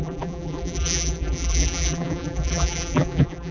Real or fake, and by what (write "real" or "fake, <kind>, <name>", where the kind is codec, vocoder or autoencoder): fake, vocoder, BigVGAN v2